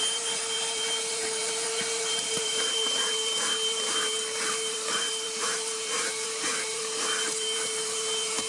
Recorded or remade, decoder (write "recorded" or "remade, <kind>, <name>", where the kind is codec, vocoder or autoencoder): remade, vocoder, BigVGAN v2